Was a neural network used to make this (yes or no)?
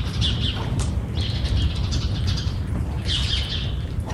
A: yes